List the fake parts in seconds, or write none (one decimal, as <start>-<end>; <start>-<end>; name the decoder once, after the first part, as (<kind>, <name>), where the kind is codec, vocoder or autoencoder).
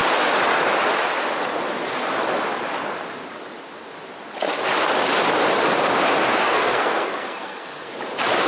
6.4-7.9 (codec, SNAC)